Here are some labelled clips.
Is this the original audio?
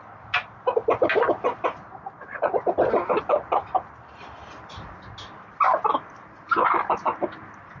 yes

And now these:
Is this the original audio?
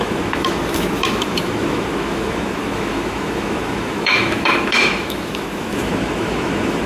no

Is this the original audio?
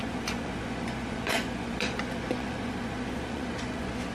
no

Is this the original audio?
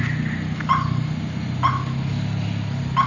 yes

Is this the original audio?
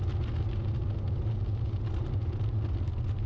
yes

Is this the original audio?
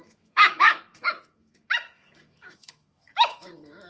no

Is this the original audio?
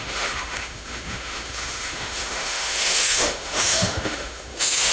no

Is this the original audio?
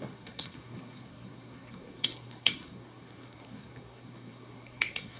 no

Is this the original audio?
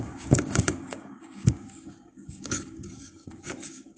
no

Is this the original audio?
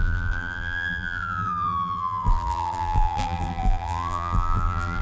no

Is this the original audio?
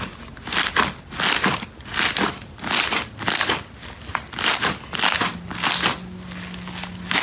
yes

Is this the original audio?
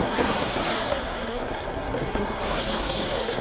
no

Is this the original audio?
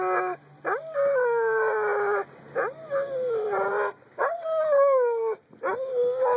yes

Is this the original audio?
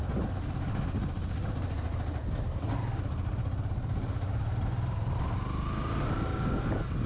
yes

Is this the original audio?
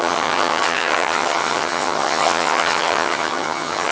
no